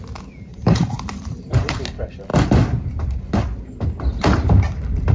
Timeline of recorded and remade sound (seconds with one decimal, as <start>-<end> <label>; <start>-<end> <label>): 0.0-0.5 recorded; 0.5-1.7 remade; 1.7-5.1 recorded